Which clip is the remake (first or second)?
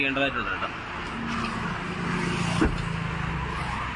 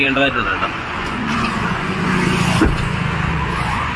second